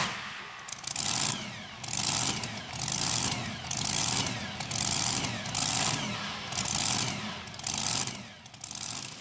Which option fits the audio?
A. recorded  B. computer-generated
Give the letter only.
A